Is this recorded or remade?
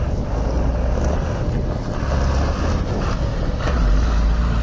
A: recorded